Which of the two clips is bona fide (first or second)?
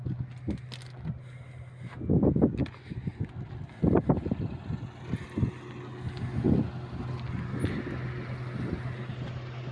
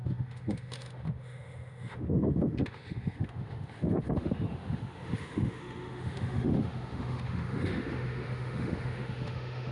first